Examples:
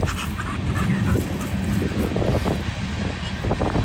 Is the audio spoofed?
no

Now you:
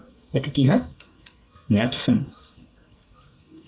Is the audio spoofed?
yes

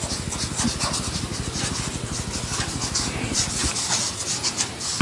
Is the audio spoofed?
no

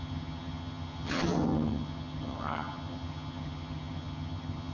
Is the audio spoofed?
yes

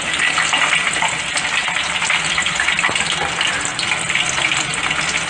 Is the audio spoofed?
no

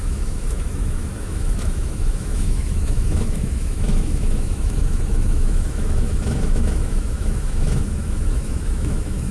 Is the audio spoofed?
yes